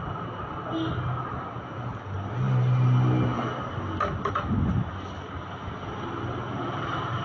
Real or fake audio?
real